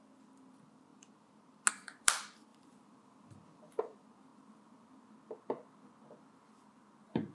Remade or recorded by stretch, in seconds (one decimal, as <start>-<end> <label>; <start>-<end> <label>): 0.0-0.9 remade; 0.9-1.7 recorded; 1.7-7.3 remade